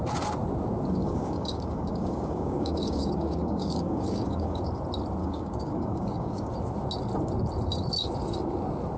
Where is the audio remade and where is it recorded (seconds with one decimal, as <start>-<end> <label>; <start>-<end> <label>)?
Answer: 0.0-1.0 recorded; 1.0-4.6 remade; 4.6-5.2 recorded; 5.2-6.5 remade; 6.5-9.0 recorded